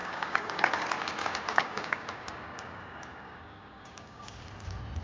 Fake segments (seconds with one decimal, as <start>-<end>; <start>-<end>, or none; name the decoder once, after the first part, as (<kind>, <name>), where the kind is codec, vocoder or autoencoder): 0.0-0.7 (codec, DAC); 1.2-4.2